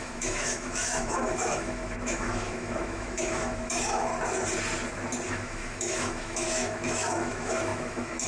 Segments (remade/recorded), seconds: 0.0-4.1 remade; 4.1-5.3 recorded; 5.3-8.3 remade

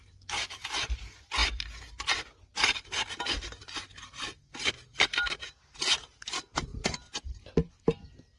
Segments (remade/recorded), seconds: 0.0-8.4 recorded

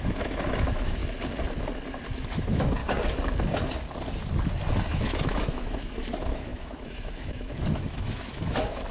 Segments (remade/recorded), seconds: 0.0-1.0 remade; 1.0-2.1 recorded; 2.1-2.8 remade; 2.8-4.9 recorded; 4.9-8.9 remade